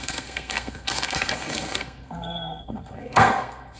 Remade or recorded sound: remade